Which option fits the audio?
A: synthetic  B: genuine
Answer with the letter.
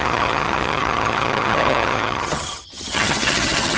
A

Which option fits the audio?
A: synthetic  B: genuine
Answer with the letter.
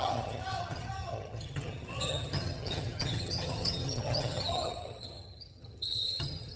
A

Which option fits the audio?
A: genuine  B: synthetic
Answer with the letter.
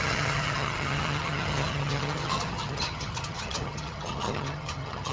B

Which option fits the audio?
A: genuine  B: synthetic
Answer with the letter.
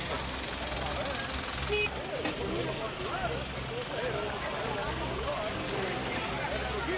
A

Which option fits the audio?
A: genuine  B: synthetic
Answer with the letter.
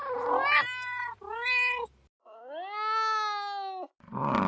A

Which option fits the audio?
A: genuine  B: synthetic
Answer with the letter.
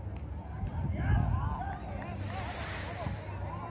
A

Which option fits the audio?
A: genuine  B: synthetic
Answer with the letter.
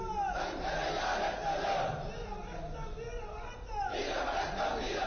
A